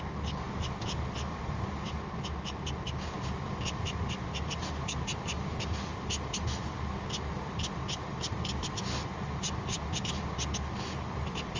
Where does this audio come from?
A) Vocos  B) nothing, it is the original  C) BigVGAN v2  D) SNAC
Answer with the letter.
B